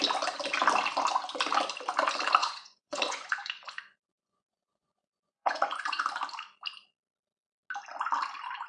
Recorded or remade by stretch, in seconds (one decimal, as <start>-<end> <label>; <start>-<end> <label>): 0.0-2.4 recorded; 2.4-6.0 remade; 6.0-8.7 recorded